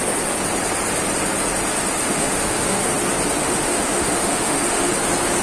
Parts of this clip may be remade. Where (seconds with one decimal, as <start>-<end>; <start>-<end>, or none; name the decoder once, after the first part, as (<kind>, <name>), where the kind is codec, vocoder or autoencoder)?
2.0-2.9 (autoencoder, DAC-VAE); 3.4-4.9